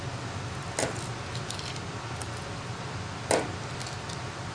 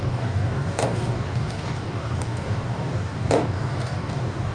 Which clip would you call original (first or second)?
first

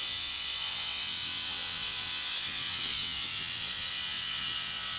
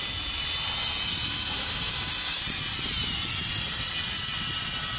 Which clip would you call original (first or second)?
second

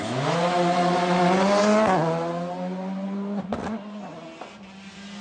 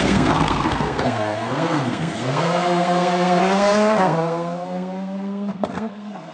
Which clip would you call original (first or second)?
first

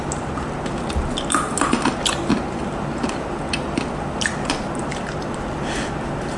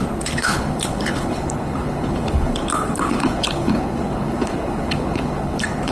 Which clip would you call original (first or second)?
first